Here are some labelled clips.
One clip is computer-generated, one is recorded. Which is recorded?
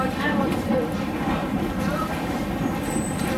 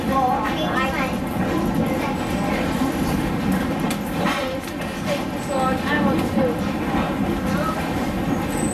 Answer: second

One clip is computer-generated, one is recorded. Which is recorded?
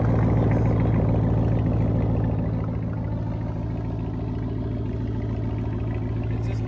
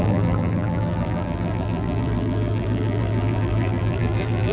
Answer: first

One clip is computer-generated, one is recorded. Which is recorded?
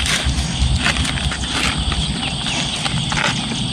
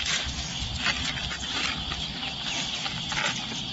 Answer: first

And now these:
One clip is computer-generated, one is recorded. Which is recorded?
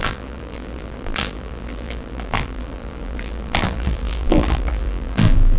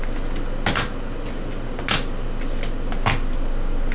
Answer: second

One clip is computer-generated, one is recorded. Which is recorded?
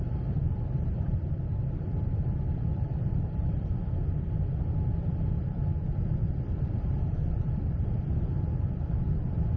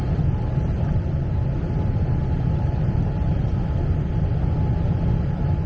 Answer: second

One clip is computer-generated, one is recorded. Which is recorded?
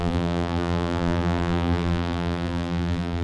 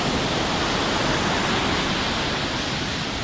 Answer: second